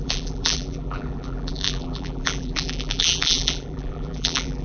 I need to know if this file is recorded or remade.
remade